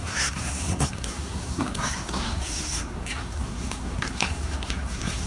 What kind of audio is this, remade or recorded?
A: remade